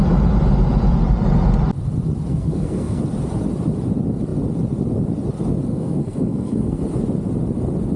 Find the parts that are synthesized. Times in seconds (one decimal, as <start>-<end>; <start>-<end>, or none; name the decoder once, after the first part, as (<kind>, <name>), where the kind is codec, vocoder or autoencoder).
2.3-3.0 (codec, SNAC); 5.7-6.8